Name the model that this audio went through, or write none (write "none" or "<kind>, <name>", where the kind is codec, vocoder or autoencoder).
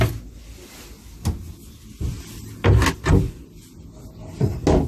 none